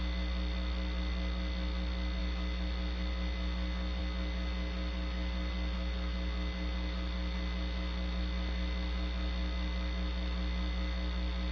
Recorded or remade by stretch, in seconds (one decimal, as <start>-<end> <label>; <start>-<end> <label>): 0.0-11.5 recorded